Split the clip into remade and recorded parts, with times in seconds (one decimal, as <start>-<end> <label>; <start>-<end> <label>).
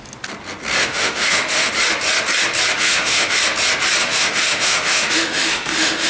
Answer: 0.0-0.8 recorded; 0.8-1.7 remade; 1.7-2.8 recorded; 2.8-3.4 remade; 3.4-4.0 recorded; 4.0-6.1 remade